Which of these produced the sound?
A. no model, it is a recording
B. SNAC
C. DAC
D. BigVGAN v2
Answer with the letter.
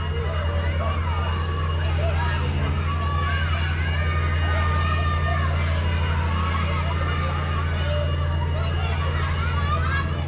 A